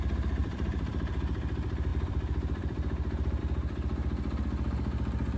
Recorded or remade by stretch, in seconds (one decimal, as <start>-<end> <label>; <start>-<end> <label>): 0.0-0.4 recorded; 0.4-0.9 remade; 0.9-1.9 recorded; 1.9-3.4 remade; 3.4-5.4 recorded